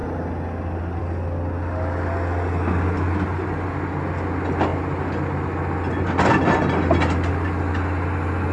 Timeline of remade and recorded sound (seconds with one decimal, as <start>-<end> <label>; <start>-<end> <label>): 0.0-8.5 recorded